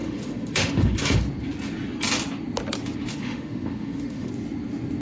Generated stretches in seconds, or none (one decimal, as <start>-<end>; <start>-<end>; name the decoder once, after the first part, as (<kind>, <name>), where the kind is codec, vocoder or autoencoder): 0.0-1.2 (autoencoder, DAC-VAE); 3.1-4.3